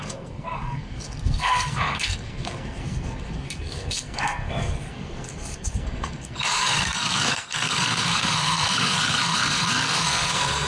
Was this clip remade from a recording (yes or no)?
yes